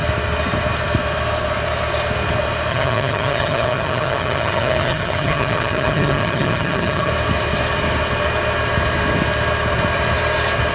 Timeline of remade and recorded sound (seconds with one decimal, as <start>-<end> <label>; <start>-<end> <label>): 0.0-2.7 recorded; 2.7-7.1 remade; 7.1-10.7 recorded